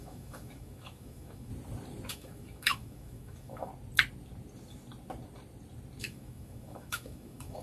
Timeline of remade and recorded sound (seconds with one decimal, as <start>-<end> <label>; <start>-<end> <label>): 0.0-1.5 remade; 1.5-2.1 recorded; 2.1-3.7 remade; 3.7-6.0 recorded; 6.0-7.6 remade